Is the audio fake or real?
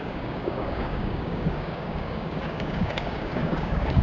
fake